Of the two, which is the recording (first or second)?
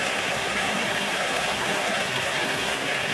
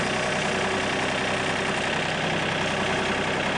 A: second